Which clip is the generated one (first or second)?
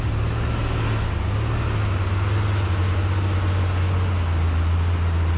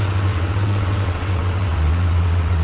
second